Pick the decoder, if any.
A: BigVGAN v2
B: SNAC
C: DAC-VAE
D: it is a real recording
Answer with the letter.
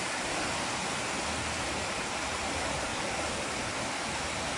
D